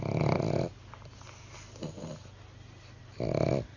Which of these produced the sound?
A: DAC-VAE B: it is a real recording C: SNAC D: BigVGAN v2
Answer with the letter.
B